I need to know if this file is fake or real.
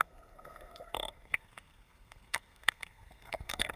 fake